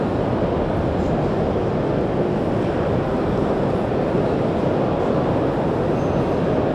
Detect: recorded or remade recorded